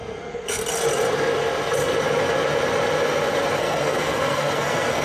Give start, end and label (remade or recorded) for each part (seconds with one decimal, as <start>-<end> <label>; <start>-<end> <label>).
0.0-0.6 remade; 0.6-3.6 recorded; 3.6-5.0 remade